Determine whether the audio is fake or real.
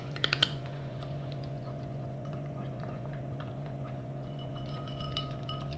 fake